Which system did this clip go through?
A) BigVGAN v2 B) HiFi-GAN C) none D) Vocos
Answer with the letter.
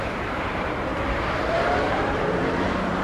A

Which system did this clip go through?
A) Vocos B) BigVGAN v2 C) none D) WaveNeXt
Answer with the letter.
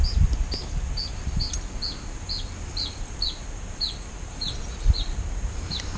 B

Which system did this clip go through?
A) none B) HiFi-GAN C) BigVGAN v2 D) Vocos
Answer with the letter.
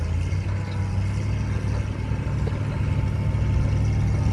A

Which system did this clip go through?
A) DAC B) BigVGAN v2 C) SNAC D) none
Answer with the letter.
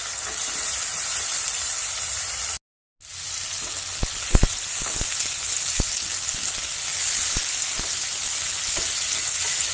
D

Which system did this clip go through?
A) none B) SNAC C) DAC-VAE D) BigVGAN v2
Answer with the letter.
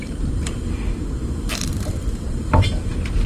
D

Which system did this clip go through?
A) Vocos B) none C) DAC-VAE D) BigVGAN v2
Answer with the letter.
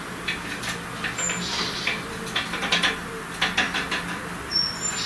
B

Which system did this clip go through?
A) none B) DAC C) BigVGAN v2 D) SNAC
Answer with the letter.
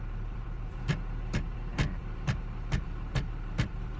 C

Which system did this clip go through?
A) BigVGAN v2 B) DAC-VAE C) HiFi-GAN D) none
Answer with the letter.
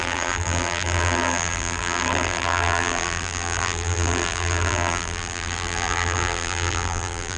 A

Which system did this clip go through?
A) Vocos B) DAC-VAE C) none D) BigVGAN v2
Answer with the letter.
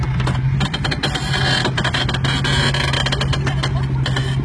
C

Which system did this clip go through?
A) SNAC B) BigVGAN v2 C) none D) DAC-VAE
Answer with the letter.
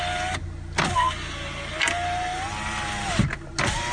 C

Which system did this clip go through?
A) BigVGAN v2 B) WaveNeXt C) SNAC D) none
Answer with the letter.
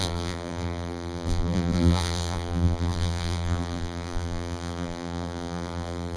A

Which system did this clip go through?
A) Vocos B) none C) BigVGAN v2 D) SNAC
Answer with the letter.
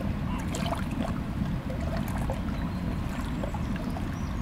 C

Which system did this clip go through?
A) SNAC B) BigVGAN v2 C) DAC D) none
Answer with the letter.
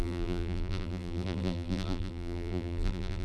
B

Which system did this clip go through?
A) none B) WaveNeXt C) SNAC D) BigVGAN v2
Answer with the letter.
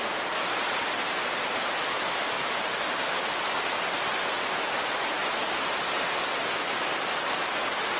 A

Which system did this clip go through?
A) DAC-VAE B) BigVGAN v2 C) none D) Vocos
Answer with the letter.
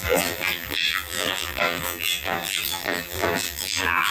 B